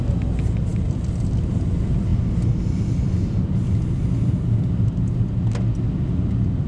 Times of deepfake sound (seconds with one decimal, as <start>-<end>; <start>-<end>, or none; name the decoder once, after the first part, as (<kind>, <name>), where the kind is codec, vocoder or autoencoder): none